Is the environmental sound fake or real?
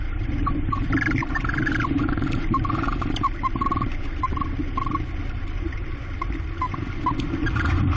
fake